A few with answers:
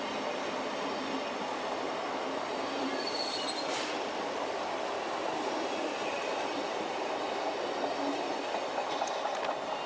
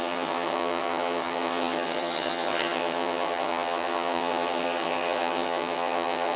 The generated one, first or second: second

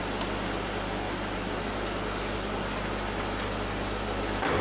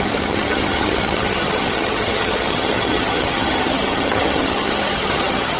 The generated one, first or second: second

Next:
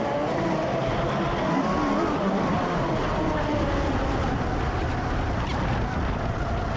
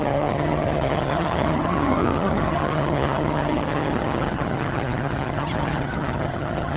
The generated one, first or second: second